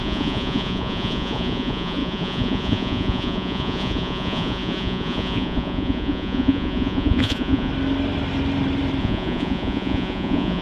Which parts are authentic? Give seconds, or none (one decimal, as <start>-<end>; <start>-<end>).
7.7-9.0